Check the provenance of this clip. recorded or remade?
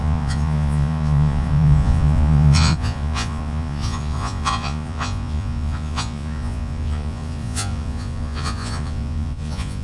remade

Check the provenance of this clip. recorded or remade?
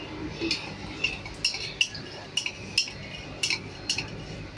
recorded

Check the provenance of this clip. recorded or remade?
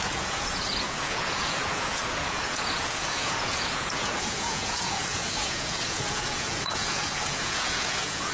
remade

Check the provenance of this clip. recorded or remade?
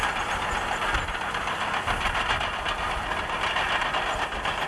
recorded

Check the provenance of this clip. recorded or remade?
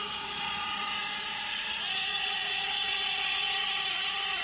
remade